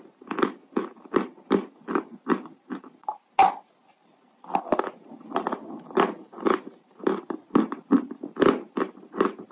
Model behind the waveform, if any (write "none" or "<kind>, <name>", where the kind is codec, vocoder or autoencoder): none